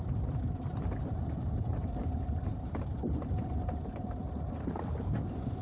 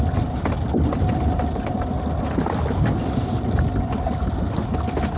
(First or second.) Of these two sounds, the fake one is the first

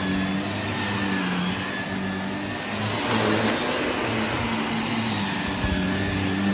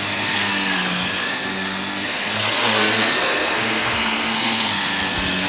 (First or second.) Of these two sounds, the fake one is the second